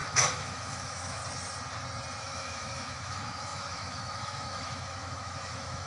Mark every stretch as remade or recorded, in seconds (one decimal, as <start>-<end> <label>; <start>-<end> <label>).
0.0-1.2 remade; 1.2-2.2 recorded; 2.2-5.9 remade